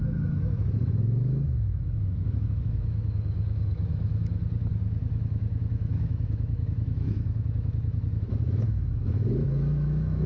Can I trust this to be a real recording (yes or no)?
no